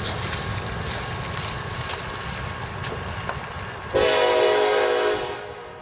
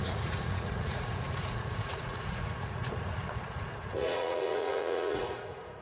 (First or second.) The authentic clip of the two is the first